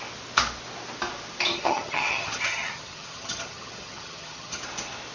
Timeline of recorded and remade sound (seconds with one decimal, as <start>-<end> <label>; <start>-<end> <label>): 0.0-1.5 recorded; 1.5-4.6 remade; 4.6-5.1 recorded